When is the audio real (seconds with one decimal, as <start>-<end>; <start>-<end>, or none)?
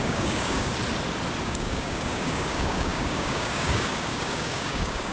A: 0.7-1.4